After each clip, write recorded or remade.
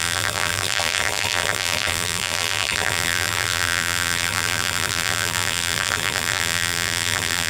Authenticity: remade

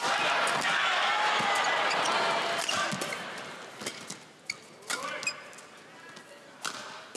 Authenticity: recorded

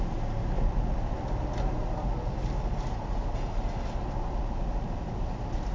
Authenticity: recorded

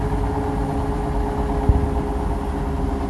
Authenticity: recorded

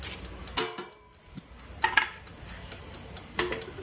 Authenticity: recorded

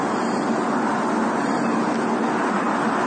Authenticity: recorded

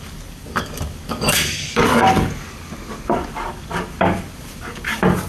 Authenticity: remade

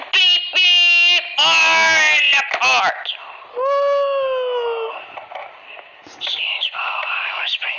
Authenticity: recorded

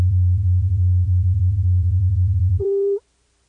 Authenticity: remade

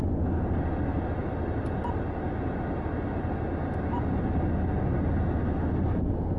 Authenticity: recorded